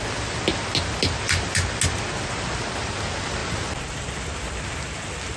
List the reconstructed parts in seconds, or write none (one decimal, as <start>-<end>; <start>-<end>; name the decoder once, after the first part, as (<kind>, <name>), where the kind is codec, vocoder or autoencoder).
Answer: 3.4-4.6 (vocoder, BigVGAN v2)